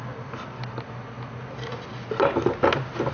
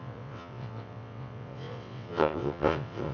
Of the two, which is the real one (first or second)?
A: first